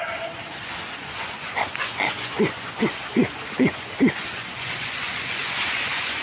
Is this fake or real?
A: fake